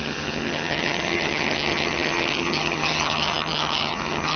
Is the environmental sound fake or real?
fake